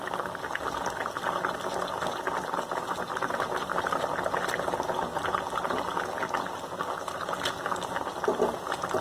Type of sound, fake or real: real